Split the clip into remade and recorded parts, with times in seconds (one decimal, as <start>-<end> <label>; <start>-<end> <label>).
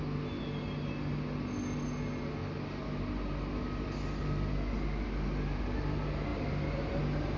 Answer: 0.0-7.4 recorded